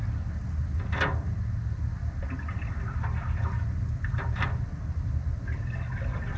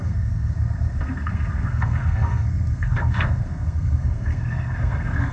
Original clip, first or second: first